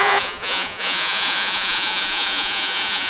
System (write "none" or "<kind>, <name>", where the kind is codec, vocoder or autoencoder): vocoder, Vocos